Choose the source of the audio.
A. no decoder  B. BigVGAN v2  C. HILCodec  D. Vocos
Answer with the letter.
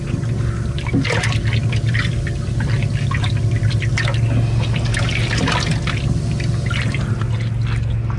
A